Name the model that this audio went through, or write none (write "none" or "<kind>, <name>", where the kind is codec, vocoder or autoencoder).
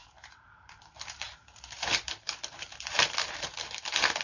vocoder, BigVGAN v2